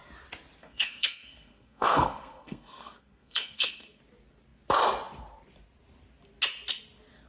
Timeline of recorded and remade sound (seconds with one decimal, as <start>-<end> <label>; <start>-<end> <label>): 0.0-0.6 recorded; 0.6-4.0 remade; 4.0-7.3 recorded